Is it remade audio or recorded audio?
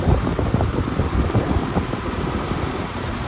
remade